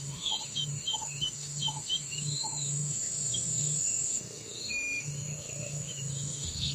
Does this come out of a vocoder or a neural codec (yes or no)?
yes